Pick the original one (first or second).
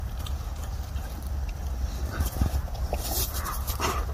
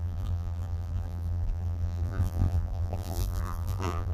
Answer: first